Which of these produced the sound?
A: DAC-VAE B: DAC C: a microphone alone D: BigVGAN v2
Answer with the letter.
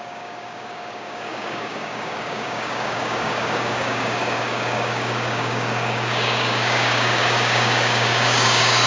B